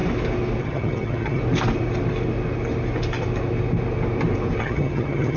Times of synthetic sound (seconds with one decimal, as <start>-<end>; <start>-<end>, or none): 0.6-1.4; 4.6-5.4